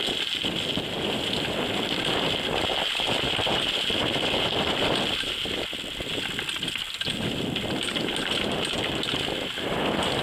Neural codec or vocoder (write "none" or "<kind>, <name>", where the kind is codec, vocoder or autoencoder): none